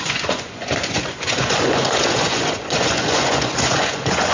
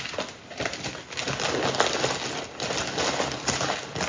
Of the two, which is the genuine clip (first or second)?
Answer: second